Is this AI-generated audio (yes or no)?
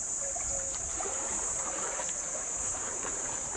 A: yes